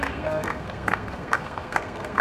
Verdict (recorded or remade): remade